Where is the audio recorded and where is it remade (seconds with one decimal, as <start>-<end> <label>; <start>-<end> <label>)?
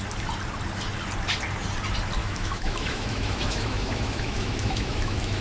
0.0-2.2 recorded; 2.2-5.4 remade